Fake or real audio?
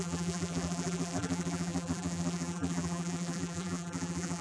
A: fake